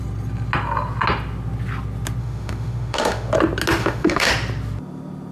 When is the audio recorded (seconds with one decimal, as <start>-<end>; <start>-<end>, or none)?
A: 0.0-2.2; 3.3-3.8; 4.3-5.3